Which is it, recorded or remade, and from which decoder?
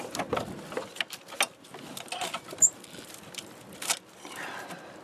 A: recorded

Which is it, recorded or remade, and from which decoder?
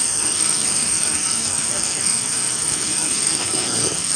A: remade, codec, SNAC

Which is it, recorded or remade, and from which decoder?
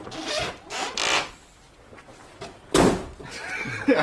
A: remade, vocoder, BigVGAN v2